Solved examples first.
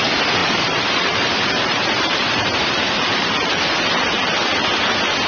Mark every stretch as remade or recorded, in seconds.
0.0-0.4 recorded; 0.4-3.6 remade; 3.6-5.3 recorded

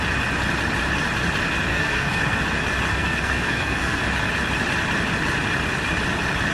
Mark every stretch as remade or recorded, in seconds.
0.0-1.7 recorded; 1.7-2.4 remade; 2.4-2.9 recorded; 2.9-4.0 remade; 4.0-6.5 recorded

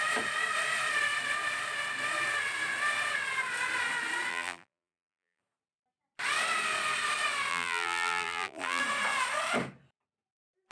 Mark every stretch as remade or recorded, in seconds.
0.0-4.3 recorded; 4.3-5.4 remade; 5.4-7.5 recorded; 7.5-8.8 remade; 8.8-10.7 recorded

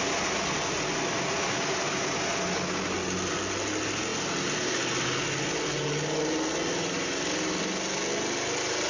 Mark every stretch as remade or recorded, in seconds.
0.0-8.9 recorded